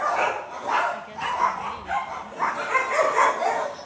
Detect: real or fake real